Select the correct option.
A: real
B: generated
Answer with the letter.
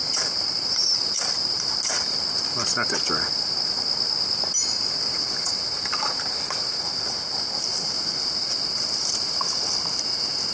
A